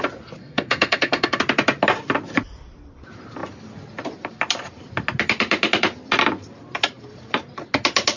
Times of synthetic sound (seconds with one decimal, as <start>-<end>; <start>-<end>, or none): 0.4-1.4